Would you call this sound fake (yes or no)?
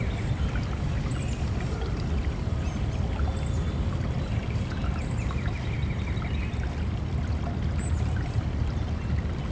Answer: no